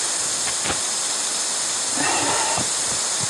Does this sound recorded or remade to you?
recorded